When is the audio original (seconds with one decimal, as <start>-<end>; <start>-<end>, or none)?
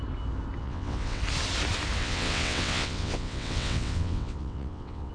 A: 0.0-0.6; 1.2-2.0